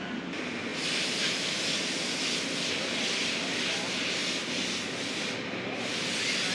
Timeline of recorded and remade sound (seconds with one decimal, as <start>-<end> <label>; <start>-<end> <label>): 0.0-6.5 recorded